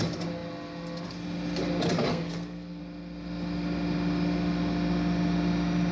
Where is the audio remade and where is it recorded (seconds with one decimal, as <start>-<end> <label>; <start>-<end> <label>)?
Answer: 0.0-2.1 recorded; 2.1-2.8 remade; 2.8-5.9 recorded